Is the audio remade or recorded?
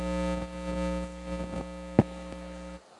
recorded